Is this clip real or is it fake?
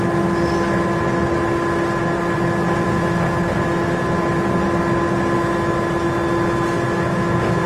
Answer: real